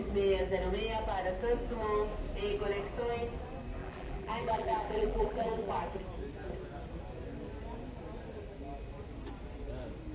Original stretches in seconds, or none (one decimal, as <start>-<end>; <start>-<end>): 0.0-3.8; 5.7-10.1